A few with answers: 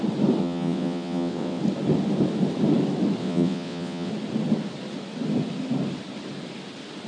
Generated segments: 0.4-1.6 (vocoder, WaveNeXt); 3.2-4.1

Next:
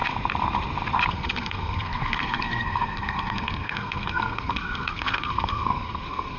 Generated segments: 1.1-6.4 (codec, SNAC)

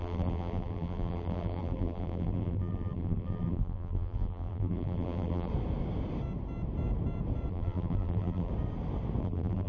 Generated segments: 0.0-5.5 (vocoder, BigVGAN v2); 7.5-8.5; 9.2-9.7

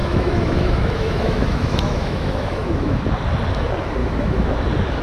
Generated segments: 0.0-3.0 (autoencoder, DAC-VAE); 4.0-4.6

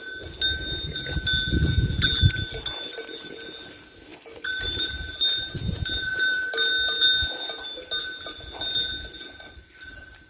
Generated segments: 4.1-6.7 (vocoder, BigVGAN v2)

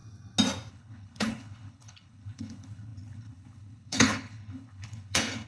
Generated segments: 0.7-5.5 (codec, HILCodec)